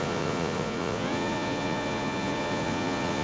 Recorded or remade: remade